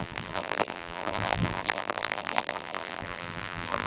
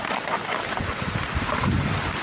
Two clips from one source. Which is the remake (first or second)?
first